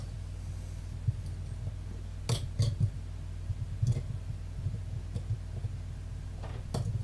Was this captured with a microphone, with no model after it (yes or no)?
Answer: yes